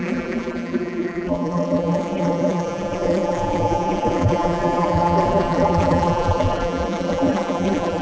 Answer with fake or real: fake